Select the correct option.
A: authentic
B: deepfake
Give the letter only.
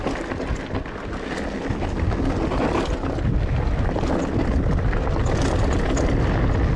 A